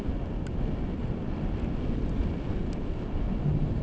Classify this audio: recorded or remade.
recorded